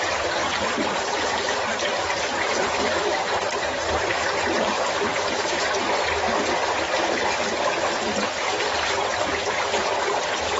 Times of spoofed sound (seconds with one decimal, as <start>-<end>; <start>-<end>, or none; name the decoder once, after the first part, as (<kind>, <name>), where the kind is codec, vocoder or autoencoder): 0.0-5.1 (vocoder, BigVGAN v2); 8.9-9.3